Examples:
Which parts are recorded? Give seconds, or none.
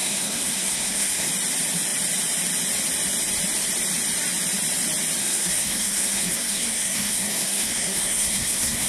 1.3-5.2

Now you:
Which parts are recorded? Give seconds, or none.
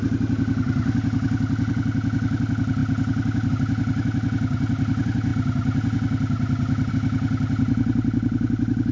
0.0-8.9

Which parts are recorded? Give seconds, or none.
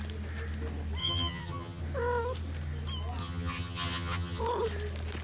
0.0-1.0; 1.8-3.2; 4.4-5.2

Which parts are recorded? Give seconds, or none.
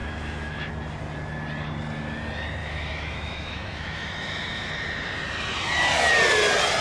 0.7-2.6; 4.7-6.8